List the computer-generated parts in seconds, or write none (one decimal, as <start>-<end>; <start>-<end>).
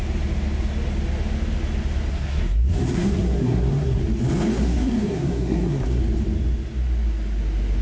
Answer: 2.1-4.0; 4.5-6.0